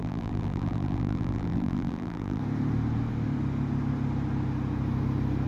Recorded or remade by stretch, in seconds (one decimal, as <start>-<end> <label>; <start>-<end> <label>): 0.0-2.4 remade; 2.4-5.5 recorded

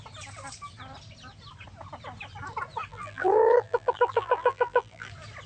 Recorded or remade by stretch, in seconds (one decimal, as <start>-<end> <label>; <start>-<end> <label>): 0.0-2.9 recorded; 2.9-5.1 remade; 5.1-5.5 recorded